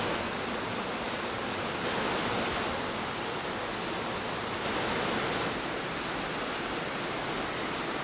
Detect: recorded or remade recorded